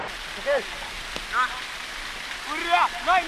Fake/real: real